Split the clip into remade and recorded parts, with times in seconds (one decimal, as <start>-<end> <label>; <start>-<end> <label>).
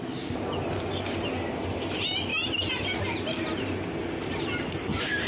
0.0-5.3 recorded